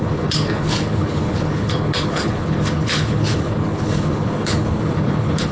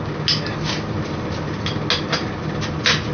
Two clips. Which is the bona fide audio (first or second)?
second